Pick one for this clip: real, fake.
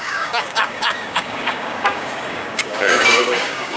fake